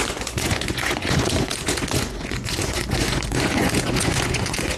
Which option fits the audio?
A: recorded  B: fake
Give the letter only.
B